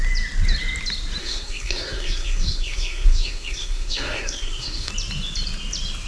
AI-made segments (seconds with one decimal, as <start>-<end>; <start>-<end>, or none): 1.2-4.9